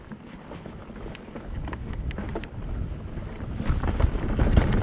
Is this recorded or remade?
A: recorded